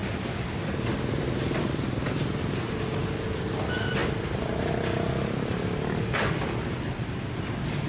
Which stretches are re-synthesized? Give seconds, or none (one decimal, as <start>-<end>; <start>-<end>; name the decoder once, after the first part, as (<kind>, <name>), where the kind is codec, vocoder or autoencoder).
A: 0.0-0.6 (vocoder, BigVGAN v2)